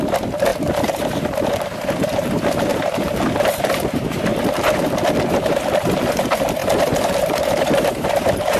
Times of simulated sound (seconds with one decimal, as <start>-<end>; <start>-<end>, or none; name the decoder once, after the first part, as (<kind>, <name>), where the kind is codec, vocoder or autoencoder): 0.0-4.3 (vocoder, BigVGAN v2); 5.3-8.6